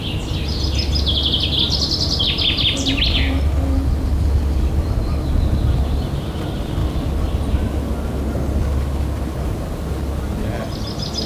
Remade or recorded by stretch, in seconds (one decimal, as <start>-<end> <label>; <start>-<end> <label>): 0.0-11.3 recorded